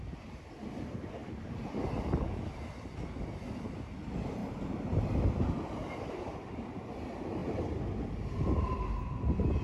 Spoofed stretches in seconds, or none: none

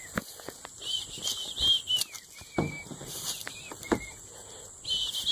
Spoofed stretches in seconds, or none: none